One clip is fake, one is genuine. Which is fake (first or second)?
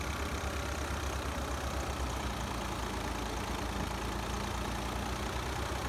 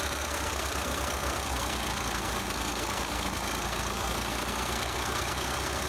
second